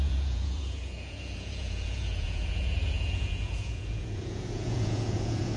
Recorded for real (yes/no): no